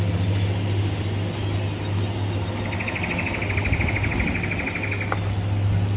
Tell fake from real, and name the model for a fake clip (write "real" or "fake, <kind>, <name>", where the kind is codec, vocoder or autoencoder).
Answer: real